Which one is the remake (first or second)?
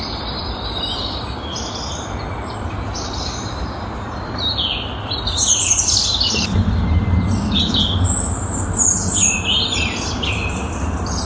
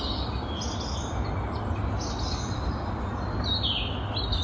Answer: first